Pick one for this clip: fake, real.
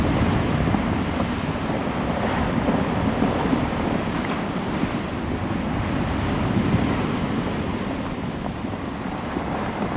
real